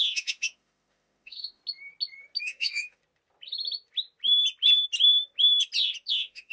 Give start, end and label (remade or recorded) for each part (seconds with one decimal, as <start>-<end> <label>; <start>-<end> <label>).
0.0-1.6 remade; 1.6-2.4 recorded; 2.4-3.0 remade; 3.0-6.1 recorded; 6.1-6.5 remade